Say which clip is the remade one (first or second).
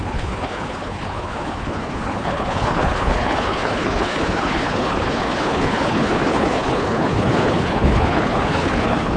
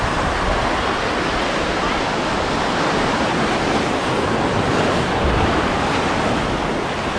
first